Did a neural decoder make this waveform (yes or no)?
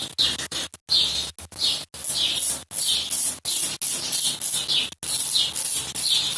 no